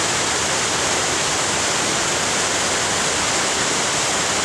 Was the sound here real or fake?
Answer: real